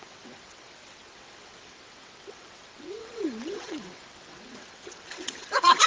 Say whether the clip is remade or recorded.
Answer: remade